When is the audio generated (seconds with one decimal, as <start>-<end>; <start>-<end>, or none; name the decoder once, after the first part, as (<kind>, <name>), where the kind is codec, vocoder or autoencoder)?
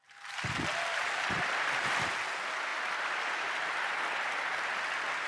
none